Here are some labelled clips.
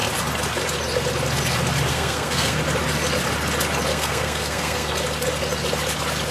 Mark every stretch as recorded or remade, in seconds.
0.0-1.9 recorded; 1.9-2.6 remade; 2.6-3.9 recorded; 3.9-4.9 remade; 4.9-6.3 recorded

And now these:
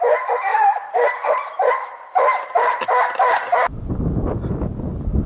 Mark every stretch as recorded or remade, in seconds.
0.0-0.5 recorded; 0.5-1.7 remade; 1.7-5.3 recorded

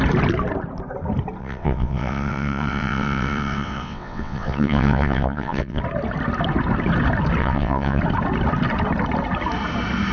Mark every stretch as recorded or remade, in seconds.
0.0-1.4 recorded; 1.4-5.8 remade; 5.8-7.4 recorded; 7.4-8.0 remade; 8.0-10.1 recorded

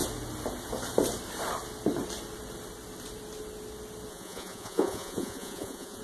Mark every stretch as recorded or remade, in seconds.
0.0-4.1 recorded; 4.1-6.0 remade

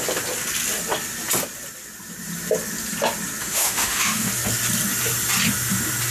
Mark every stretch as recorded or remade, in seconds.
0.0-3.4 recorded; 3.4-4.3 remade; 4.3-6.1 recorded

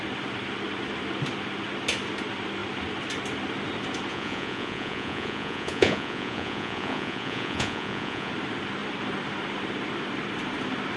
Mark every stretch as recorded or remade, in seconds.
0.0-4.1 recorded; 4.1-8.3 remade; 8.3-11.0 recorded

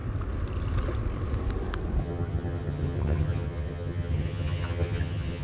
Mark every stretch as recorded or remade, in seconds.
0.0-2.0 recorded; 2.0-5.4 remade